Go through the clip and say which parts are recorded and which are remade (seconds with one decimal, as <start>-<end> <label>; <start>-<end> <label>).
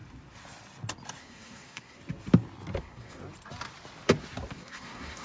0.0-1.2 recorded; 1.2-2.0 remade; 2.0-2.8 recorded; 2.8-3.2 remade; 3.2-4.5 recorded; 4.5-5.2 remade